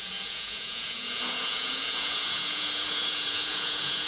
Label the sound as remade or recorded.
remade